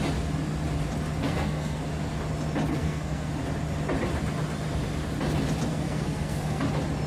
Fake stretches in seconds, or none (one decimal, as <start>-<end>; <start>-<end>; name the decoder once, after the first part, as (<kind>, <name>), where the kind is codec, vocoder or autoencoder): 1.2-1.8 (codec, SNAC); 2.7-3.3; 5.7-6.6